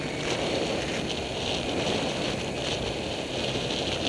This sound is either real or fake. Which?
real